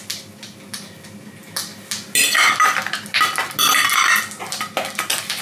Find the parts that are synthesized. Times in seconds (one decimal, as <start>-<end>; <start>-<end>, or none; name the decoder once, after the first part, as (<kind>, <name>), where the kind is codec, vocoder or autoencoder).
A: none